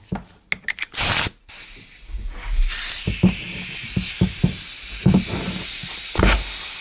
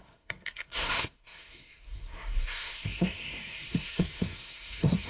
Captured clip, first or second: first